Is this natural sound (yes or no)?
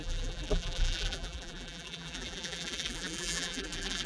no